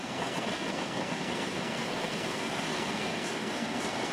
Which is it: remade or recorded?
remade